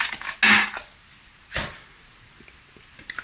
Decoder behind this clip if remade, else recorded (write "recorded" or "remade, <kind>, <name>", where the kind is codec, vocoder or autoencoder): recorded